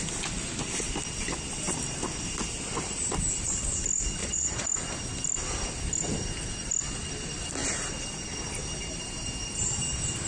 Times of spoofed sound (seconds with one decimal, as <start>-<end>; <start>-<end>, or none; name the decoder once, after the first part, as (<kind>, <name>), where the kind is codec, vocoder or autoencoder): 4.2-4.7 (vocoder, Vocos)